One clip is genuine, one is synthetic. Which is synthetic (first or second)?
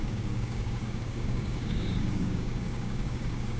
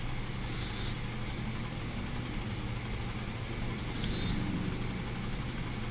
first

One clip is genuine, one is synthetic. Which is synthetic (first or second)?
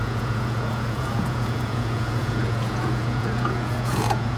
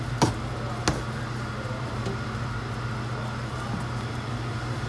first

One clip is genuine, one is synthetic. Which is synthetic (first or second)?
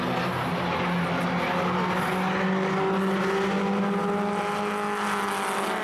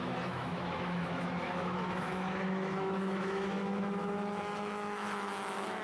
second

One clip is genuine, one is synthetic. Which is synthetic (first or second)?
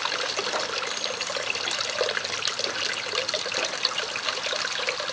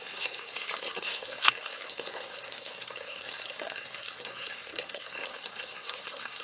second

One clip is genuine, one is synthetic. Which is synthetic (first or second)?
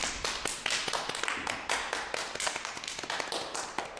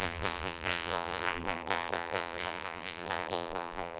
second